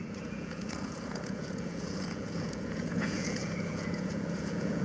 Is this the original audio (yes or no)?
no